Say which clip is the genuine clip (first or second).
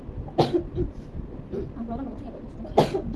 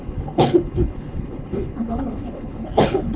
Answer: first